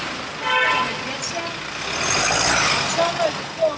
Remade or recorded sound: recorded